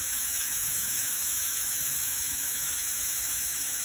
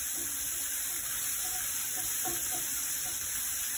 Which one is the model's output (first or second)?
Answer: first